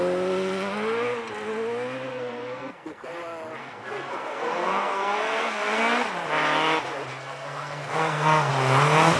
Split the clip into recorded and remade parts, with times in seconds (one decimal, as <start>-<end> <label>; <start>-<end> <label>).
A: 0.0-2.1 recorded; 2.1-3.1 remade; 3.1-3.6 recorded; 3.6-5.8 remade; 5.8-7.1 recorded; 7.1-8.5 remade; 8.5-9.2 recorded